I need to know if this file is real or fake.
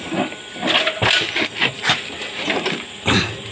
real